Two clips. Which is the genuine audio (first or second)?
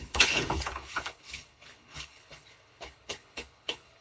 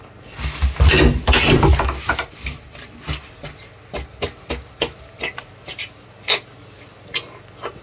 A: second